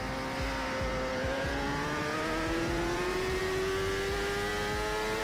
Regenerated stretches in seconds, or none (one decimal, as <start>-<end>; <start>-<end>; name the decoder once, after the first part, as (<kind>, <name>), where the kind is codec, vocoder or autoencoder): 1.1-3.4 (vocoder, Vocos)